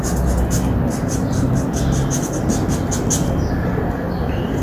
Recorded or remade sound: recorded